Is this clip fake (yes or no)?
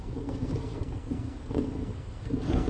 yes